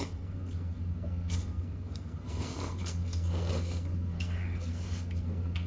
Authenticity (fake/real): fake